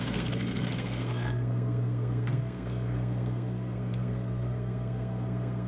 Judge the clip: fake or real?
fake